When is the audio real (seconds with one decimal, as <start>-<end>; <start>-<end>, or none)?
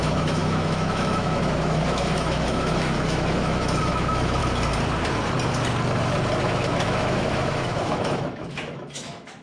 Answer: 4.4-6.4